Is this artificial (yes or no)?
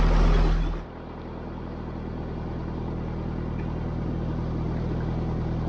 no